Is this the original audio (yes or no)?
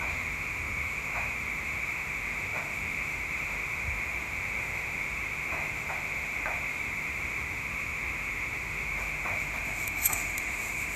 no